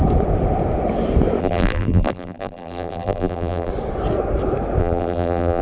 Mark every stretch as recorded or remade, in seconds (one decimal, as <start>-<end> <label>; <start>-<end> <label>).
0.0-1.4 recorded; 1.4-3.7 remade; 3.7-4.8 recorded; 4.8-5.6 remade